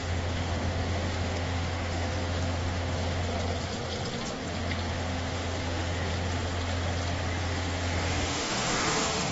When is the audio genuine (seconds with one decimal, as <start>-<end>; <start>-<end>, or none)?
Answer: 3.2-4.9; 6.1-7.4

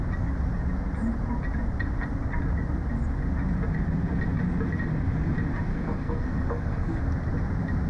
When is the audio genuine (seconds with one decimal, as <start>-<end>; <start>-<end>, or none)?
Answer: 0.0-5.7; 7.0-7.9

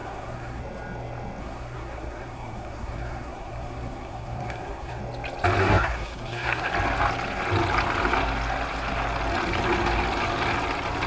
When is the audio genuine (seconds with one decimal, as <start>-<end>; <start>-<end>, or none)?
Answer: 0.6-1.4; 5.0-5.6; 6.7-11.1

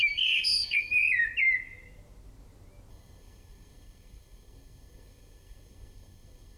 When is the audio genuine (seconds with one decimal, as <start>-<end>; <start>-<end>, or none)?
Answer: 1.0-2.9

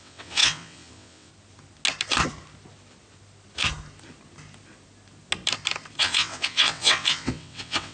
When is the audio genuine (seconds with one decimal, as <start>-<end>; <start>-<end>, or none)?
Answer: 1.3-6.0

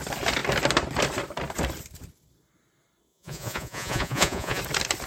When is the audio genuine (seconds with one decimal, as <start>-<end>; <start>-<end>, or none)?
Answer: 0.0-3.1; 4.6-5.1

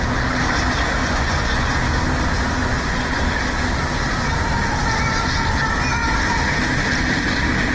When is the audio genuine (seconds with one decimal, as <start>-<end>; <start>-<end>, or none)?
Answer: 0.0-1.0; 1.7-2.6; 3.2-7.7